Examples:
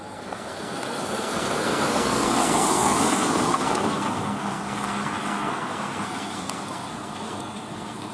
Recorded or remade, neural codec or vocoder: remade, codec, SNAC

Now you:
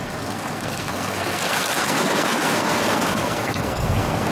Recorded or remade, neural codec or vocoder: remade, codec, SNAC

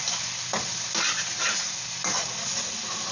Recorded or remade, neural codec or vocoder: recorded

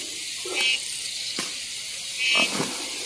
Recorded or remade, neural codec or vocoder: recorded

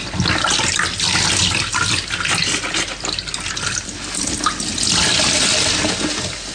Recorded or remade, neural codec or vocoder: recorded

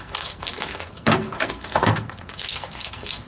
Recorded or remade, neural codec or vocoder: remade, codec, SNAC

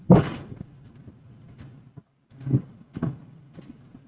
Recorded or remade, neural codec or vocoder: recorded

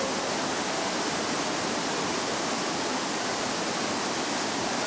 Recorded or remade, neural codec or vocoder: recorded